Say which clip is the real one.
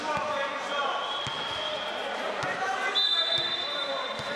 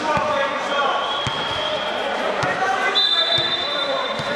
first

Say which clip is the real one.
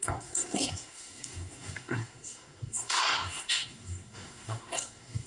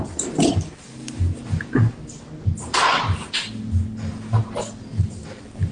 second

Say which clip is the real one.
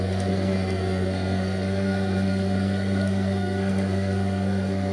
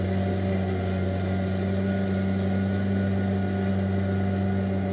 second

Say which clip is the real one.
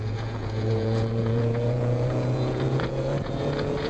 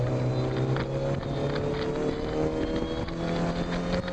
second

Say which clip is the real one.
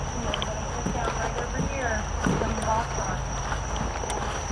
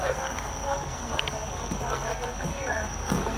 first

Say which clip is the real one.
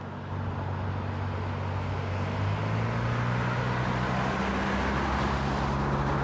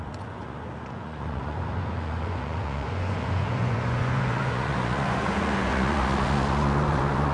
first